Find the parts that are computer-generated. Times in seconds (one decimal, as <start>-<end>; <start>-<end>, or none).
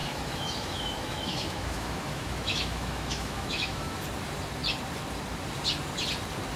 0.0-4.0